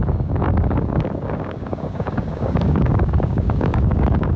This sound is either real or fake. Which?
fake